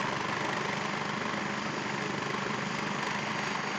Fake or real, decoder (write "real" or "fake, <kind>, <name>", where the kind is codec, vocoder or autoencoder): real